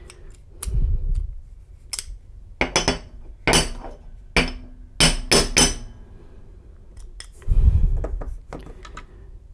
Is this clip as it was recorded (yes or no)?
yes